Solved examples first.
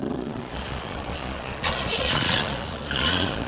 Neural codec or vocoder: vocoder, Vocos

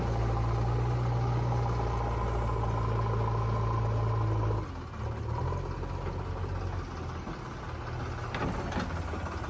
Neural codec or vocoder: none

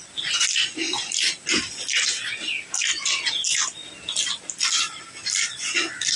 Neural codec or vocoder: none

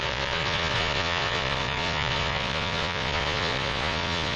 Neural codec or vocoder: vocoder, Vocos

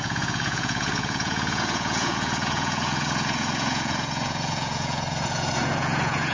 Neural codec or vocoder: vocoder, Vocos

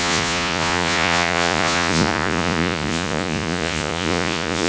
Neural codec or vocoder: vocoder, Vocos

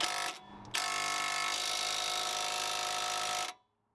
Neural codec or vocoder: none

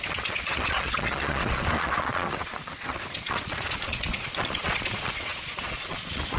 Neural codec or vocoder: vocoder, Vocos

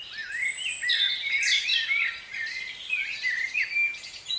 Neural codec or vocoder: none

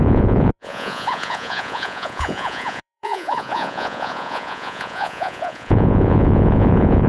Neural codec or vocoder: vocoder, Vocos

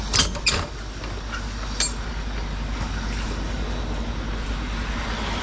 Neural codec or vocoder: none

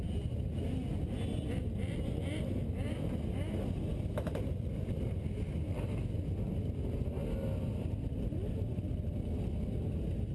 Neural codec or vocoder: none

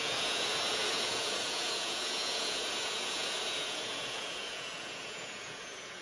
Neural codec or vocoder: vocoder, Vocos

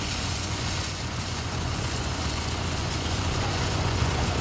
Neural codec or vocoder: vocoder, Vocos